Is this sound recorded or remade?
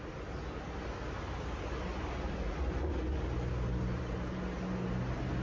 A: recorded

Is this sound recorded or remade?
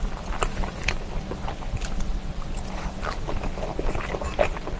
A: recorded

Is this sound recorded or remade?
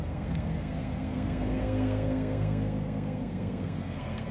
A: remade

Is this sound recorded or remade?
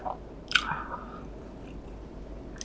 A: recorded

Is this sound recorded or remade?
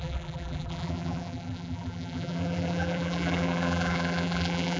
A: remade